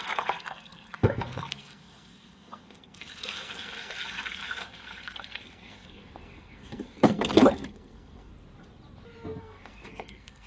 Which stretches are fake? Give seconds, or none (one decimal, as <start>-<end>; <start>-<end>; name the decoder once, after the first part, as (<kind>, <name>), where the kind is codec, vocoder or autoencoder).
0.0-8.3 (codec, SNAC); 9.4-10.5